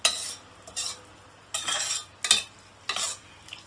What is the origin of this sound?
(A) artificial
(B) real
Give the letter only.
B